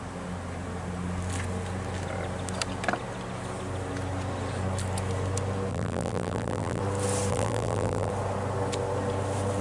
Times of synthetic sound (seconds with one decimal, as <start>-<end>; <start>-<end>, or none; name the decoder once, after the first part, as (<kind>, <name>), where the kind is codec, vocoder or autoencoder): 5.7-6.8 (vocoder, BigVGAN v2); 7.3-8.1